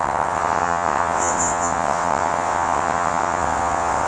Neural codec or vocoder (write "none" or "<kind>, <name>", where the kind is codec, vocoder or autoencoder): vocoder, WaveNeXt